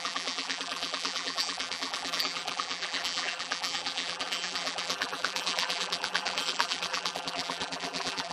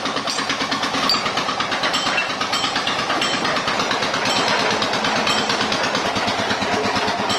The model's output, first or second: first